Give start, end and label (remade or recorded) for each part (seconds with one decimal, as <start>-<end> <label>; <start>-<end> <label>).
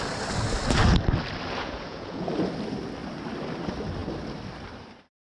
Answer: 0.0-1.6 recorded; 1.6-2.3 remade; 2.3-5.2 recorded